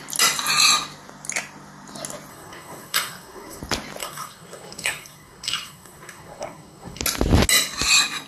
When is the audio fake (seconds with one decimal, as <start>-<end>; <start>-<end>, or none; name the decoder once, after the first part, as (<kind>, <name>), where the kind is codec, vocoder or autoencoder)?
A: 2.3-3.6 (codec, SNAC); 4.0-7.0